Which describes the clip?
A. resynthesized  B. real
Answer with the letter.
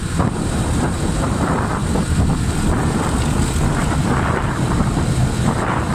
A